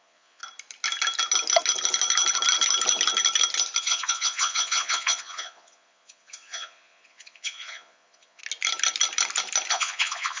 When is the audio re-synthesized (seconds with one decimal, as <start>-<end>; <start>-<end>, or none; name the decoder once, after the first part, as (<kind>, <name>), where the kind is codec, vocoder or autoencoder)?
0.0-0.4 (vocoder, Vocos); 3.8-8.4; 9.7-10.4